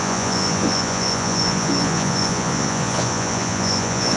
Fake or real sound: fake